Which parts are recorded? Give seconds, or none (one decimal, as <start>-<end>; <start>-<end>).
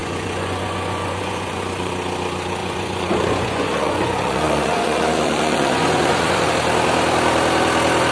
1.9-2.6; 6.5-8.1